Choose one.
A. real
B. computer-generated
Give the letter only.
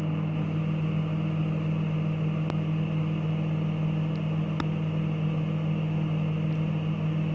A